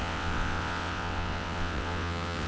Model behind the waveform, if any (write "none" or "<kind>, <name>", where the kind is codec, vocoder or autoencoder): vocoder, WaveNeXt